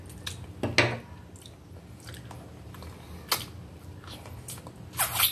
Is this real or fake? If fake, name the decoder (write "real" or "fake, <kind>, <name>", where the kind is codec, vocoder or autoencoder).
real